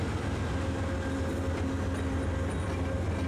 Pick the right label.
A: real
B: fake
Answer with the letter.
A